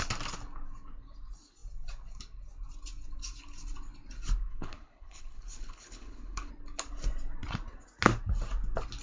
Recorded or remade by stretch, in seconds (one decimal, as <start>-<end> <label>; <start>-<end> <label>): 0.0-4.5 recorded; 4.5-6.5 remade; 6.5-9.0 recorded